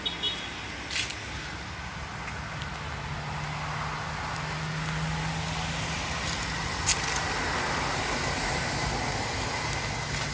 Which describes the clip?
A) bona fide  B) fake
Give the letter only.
A